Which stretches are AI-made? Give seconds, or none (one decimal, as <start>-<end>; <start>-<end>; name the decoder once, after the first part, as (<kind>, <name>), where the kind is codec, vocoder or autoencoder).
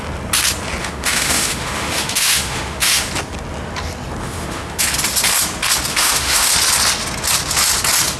0.8-3.1 (autoencoder, DAC-VAE); 4.2-4.8; 5.9-6.5